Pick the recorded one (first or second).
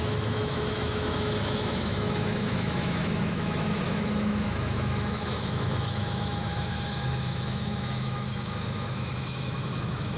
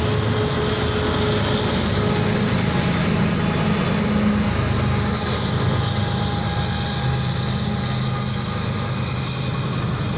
second